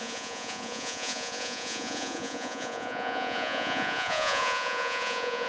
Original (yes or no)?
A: no